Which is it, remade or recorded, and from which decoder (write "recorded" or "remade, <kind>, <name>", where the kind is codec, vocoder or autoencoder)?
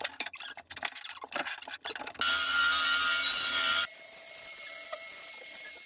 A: recorded